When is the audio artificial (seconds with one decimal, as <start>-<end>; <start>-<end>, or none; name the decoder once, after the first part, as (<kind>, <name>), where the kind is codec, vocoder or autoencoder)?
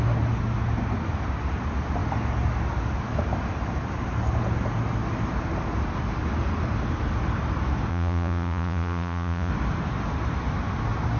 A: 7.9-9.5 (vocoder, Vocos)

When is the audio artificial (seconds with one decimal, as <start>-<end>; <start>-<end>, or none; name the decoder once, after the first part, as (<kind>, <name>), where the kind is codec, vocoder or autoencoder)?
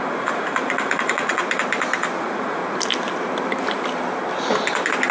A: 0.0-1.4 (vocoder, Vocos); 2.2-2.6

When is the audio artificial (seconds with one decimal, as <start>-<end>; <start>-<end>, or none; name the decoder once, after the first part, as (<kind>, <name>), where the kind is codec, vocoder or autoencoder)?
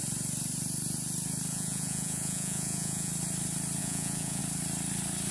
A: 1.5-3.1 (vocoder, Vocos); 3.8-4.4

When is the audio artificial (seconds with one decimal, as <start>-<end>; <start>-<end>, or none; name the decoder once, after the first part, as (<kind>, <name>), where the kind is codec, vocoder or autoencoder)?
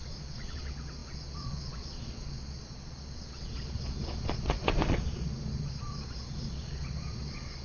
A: 0.0-7.6 (vocoder, Vocos)